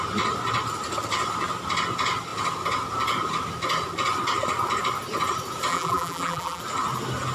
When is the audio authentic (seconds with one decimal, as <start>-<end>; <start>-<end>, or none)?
0.0-5.7; 6.6-7.3

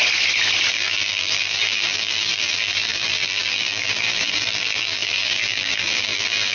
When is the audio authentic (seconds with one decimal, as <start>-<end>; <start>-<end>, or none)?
0.0-0.7

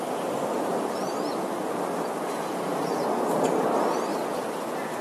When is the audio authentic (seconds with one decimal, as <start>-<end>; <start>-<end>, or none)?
0.0-0.5; 1.7-5.0